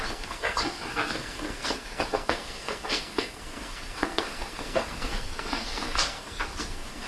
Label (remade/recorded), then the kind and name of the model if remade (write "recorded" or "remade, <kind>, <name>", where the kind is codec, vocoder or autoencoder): remade, codec, SNAC